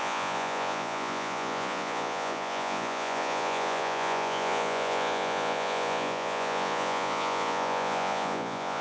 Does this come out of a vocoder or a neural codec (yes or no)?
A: yes